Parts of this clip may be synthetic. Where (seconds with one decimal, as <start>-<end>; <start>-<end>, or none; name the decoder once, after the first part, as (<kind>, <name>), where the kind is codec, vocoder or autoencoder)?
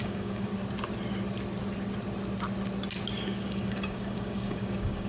0.0-0.5 (codec, DAC); 3.2-5.1